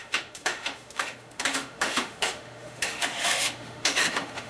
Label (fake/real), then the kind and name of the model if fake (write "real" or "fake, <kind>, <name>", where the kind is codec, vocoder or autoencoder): fake, autoencoder, DAC-VAE